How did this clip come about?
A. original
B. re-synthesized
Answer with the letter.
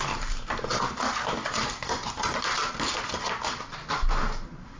A